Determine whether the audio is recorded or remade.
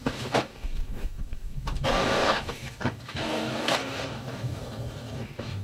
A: remade